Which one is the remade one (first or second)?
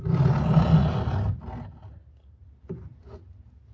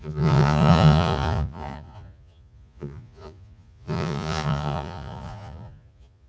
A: second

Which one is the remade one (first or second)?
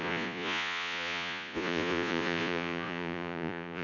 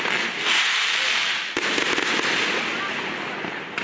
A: first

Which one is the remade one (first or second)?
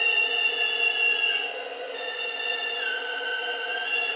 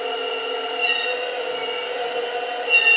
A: first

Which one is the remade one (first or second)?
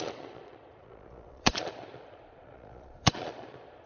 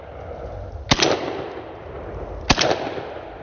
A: first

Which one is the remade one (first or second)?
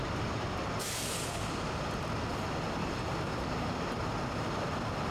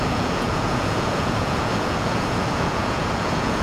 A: second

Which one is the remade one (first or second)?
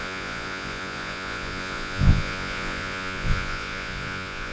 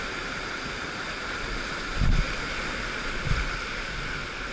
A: first